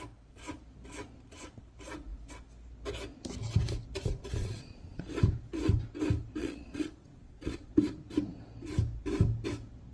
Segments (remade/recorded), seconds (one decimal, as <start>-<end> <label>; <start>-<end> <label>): 0.0-4.4 recorded; 4.4-5.0 remade; 5.0-6.4 recorded; 6.4-7.7 remade; 7.7-9.9 recorded